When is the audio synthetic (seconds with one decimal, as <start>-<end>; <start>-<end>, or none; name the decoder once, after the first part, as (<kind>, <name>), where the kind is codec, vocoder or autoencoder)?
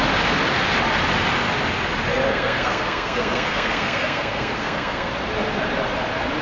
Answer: 2.3-5.1 (codec, SNAC)